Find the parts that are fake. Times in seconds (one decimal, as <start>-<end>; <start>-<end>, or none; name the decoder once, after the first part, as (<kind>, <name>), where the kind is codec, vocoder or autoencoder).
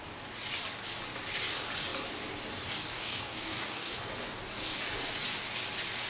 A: 2.9-4.0 (codec, DAC)